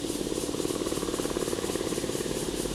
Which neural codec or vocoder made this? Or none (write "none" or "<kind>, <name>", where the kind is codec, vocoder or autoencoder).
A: vocoder, BigVGAN v2